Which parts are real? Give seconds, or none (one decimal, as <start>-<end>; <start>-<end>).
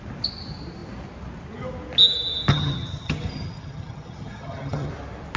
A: 0.0-2.5; 4.9-5.4